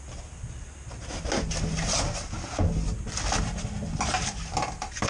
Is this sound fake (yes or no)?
no